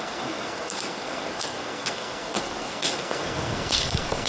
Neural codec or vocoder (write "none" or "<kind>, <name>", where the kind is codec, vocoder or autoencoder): codec, SNAC